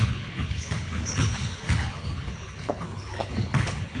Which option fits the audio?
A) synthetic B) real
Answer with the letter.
A